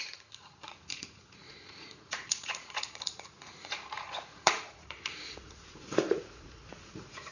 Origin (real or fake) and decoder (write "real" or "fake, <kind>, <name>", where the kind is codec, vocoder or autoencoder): fake, vocoder, Vocos